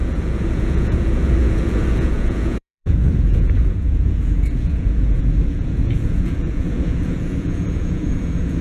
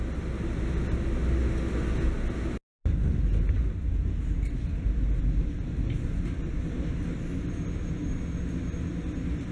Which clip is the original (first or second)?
second